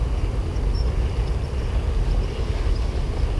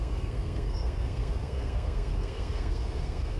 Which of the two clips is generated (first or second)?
second